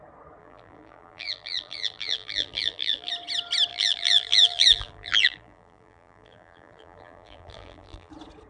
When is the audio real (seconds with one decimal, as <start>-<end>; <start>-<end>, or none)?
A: 0.0-0.4; 3.1-3.7; 8.1-8.5